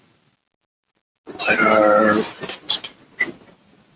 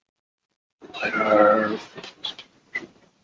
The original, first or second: first